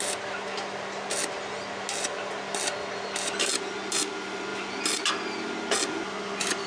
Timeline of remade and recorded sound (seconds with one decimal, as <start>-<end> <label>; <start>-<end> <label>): 0.0-6.7 recorded